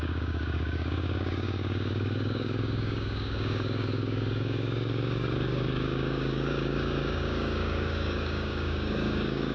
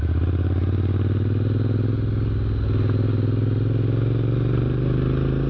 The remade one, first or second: first